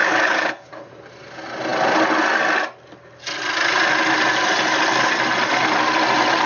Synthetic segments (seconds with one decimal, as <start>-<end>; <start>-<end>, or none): 0.0-0.9